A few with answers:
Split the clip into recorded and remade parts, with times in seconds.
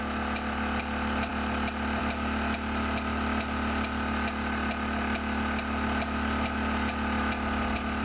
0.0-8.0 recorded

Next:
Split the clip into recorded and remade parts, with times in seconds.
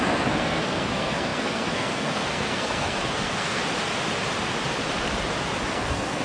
0.0-3.6 remade; 3.6-5.7 recorded; 5.7-6.2 remade